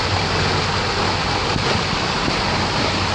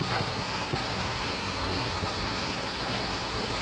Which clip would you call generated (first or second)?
second